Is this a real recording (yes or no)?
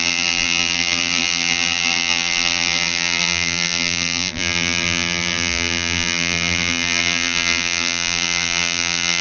no